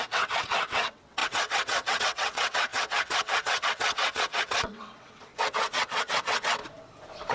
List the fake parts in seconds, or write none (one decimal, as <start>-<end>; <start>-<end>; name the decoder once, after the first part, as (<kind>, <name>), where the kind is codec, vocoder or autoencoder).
0.0-6.6 (vocoder, WaveNeXt)

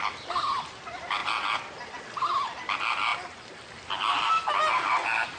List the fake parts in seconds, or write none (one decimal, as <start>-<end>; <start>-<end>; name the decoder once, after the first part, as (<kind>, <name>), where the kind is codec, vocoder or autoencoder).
none

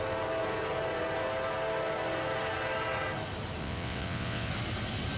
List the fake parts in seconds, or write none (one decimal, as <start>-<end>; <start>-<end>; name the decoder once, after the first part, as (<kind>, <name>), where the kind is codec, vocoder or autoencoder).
3.6-4.5 (vocoder, WaveNeXt)

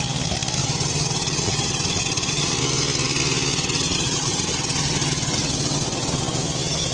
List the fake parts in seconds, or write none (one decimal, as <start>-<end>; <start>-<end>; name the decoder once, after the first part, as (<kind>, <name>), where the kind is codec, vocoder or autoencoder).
0.6-2.5 (vocoder, WaveNeXt); 3.5-6.2

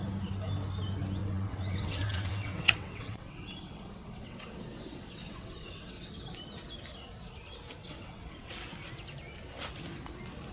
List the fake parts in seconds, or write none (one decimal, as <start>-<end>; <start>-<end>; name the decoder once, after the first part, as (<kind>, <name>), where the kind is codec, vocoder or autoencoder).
1.2-6.1 (vocoder, WaveNeXt); 7.8-8.5

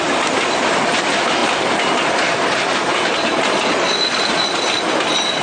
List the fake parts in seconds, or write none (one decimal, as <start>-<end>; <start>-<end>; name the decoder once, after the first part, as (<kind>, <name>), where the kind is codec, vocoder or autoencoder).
none

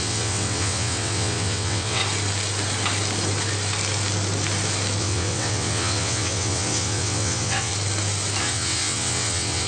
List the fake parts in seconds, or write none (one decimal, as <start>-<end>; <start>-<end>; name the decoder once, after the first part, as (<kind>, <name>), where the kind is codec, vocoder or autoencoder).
0.0-2.0 (vocoder, WaveNeXt); 5.0-7.7; 8.4-9.7

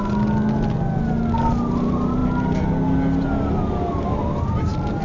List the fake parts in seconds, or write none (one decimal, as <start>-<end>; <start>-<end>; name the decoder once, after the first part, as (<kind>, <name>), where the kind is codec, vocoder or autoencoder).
none